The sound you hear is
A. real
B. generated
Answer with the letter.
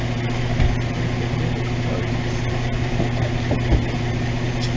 A